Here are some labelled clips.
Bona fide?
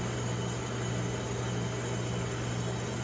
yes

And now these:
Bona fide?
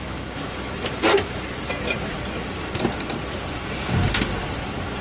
yes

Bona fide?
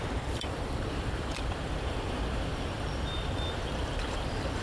no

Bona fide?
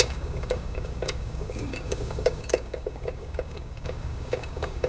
no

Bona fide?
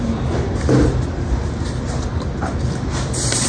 yes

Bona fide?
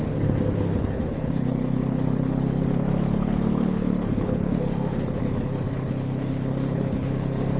no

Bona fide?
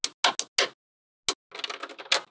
yes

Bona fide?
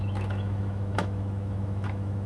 no